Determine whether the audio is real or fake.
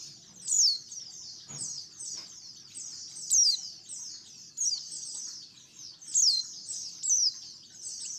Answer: real